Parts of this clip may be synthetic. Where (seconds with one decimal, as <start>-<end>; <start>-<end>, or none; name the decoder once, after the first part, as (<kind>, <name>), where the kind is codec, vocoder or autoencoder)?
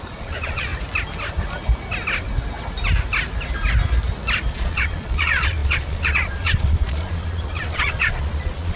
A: 0.0-0.7 (vocoder, Vocos); 4.5-8.8